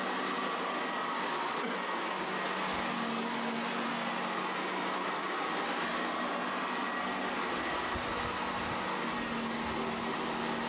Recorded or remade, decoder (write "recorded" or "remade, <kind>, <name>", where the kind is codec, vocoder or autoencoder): recorded